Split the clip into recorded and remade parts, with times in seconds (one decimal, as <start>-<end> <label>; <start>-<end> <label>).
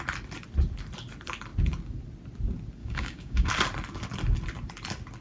0.0-2.8 recorded; 2.8-3.5 remade; 3.5-5.2 recorded